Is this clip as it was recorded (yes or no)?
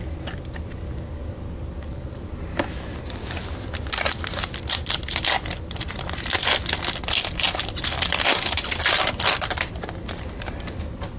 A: yes